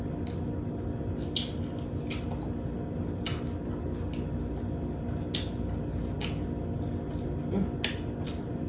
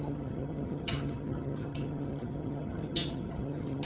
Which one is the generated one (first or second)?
second